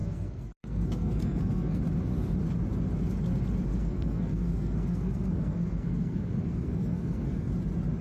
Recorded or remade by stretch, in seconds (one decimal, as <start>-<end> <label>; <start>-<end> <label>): 0.0-1.8 remade; 1.8-3.7 recorded; 3.7-7.5 remade; 7.5-8.0 recorded